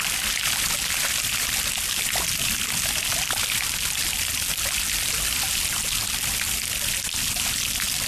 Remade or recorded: recorded